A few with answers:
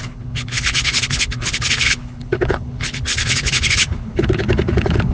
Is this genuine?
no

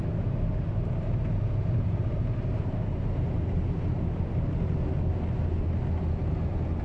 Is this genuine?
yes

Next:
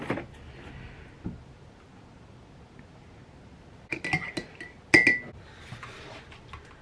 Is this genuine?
yes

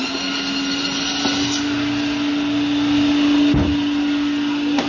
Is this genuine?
yes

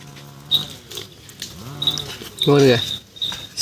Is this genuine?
yes